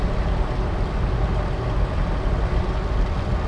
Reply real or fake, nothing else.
real